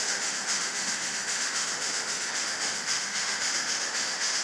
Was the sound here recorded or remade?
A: remade